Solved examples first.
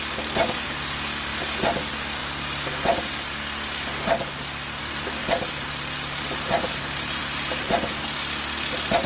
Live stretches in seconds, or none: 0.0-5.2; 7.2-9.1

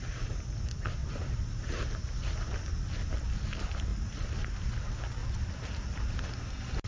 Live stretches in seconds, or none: 0.0-1.0; 2.5-3.9; 4.7-5.2; 6.3-6.9